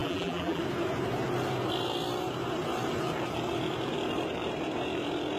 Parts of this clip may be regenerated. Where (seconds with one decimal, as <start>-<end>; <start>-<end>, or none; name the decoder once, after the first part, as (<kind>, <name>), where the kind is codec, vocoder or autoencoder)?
0.0-0.6 (vocoder, BigVGAN v2)